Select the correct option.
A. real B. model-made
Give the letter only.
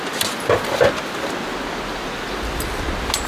A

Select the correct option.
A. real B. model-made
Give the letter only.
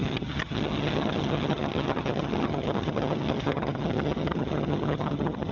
B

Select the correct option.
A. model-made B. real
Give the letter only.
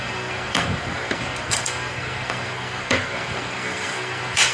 A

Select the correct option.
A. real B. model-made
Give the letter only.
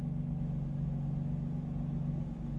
A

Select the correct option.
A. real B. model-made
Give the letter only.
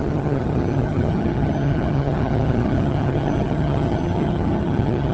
B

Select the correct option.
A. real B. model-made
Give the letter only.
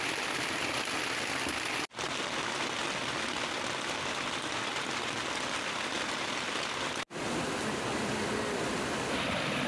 A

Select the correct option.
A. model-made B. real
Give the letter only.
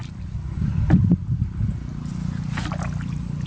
B